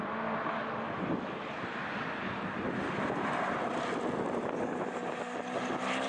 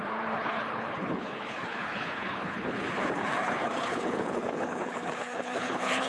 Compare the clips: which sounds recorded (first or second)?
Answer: first